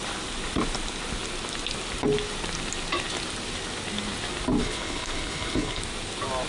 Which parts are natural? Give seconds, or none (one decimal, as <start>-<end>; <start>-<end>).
0.0-4.6; 5.8-6.5